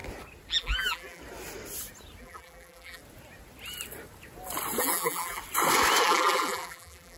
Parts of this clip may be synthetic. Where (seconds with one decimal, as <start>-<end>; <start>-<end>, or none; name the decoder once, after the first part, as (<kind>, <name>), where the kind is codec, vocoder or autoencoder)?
0.6-1.2 (vocoder, BigVGAN v2); 2.2-3.0; 4.8-5.4; 6.0-7.2